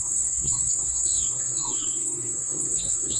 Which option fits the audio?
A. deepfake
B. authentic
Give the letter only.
A